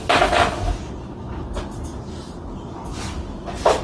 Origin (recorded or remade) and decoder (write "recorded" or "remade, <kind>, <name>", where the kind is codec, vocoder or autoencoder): recorded